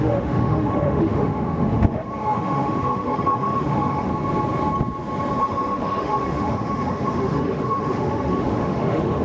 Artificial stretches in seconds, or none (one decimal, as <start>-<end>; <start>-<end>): 0.0-4.1; 5.4-9.2